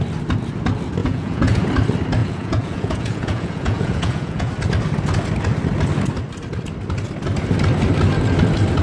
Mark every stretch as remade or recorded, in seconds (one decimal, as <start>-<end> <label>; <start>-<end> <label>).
0.0-1.0 recorded; 1.0-1.6 remade; 1.6-2.2 recorded; 2.2-4.5 remade; 4.5-8.8 recorded